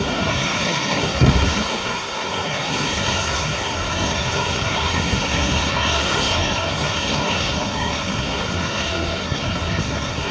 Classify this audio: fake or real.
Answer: fake